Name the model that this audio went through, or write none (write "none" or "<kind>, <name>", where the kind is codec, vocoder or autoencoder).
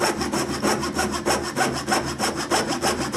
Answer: none